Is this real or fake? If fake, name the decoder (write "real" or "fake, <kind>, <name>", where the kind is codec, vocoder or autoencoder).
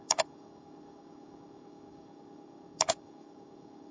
fake, codec, DAC